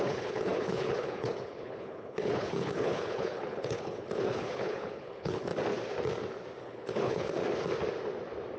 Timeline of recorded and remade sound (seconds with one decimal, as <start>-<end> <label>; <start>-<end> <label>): 0.0-5.5 remade; 5.5-6.6 recorded; 6.6-7.4 remade; 7.4-8.6 recorded